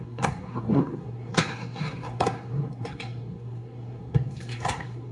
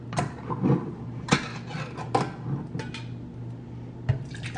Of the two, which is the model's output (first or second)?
first